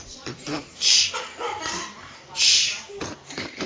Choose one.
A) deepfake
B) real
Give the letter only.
A